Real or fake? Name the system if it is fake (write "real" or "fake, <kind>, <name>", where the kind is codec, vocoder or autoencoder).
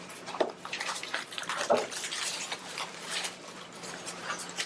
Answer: fake, vocoder, BigVGAN v2